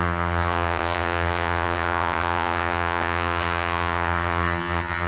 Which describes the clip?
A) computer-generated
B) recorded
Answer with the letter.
A